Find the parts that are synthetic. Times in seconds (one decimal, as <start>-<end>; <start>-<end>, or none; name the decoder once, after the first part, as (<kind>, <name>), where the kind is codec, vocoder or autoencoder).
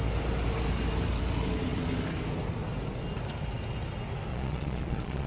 4.3-5.3 (vocoder, Vocos)